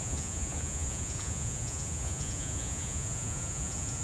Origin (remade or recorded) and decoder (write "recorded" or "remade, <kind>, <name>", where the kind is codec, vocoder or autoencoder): remade, vocoder, Vocos